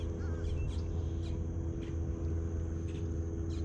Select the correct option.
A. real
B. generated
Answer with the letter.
A